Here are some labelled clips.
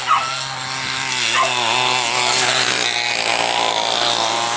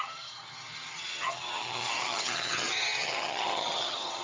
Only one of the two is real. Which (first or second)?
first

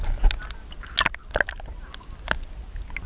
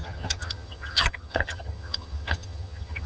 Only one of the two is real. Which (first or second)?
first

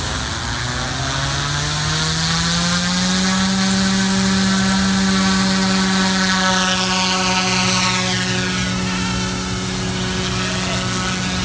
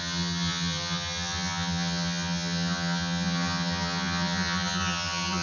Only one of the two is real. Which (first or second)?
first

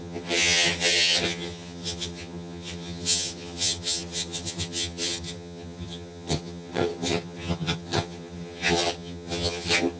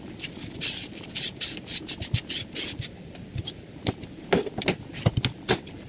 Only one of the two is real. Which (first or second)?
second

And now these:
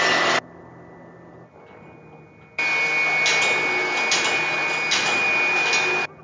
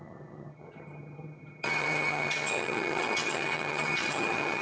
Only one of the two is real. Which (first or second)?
first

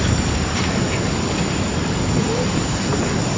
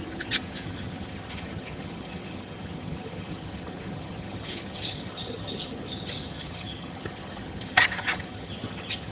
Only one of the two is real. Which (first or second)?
first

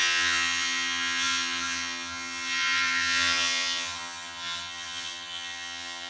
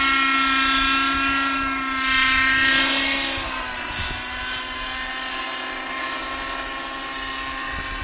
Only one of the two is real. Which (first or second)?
second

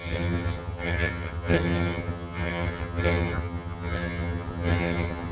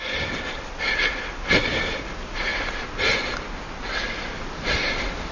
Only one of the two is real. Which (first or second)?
second